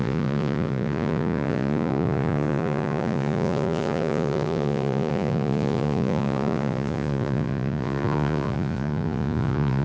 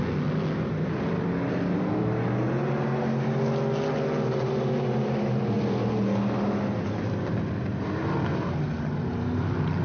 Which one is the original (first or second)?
second